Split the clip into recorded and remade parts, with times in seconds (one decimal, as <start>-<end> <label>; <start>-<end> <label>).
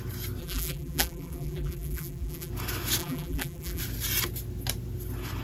0.0-0.4 recorded; 0.4-2.5 remade; 2.5-3.0 recorded; 3.0-3.8 remade; 3.8-5.4 recorded